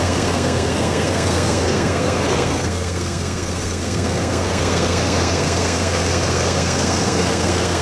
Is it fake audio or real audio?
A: fake